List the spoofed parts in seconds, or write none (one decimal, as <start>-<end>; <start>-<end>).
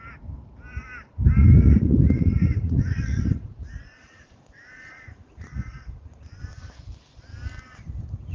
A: 1.4-6.4